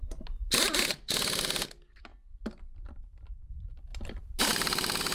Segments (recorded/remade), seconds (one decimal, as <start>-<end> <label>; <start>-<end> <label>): 0.0-2.1 recorded; 2.1-3.3 remade; 3.3-3.9 recorded; 3.9-4.4 remade; 4.4-5.1 recorded